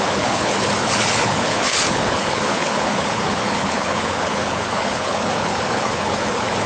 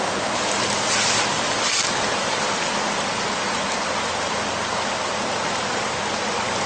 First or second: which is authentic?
second